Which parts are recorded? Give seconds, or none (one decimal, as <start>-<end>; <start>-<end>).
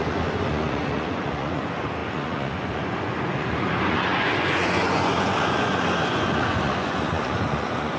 none